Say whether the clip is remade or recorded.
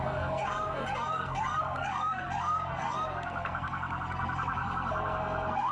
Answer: remade